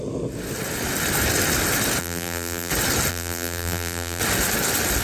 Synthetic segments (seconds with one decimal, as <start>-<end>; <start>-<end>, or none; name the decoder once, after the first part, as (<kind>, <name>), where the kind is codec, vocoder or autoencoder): 2.0-2.7 (vocoder, BigVGAN v2); 3.1-4.2